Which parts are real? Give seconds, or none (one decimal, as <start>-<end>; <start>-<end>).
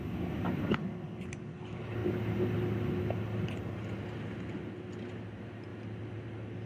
0.0-6.7